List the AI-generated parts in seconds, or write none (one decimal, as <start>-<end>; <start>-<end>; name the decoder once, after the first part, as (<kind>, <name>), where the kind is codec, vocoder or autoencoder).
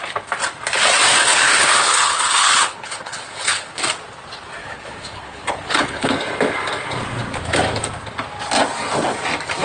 1.3-3.8 (codec, HILCodec); 4.6-6.1